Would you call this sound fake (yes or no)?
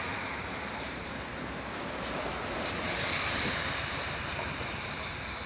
yes